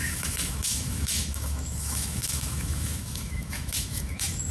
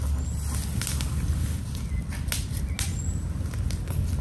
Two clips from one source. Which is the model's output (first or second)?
first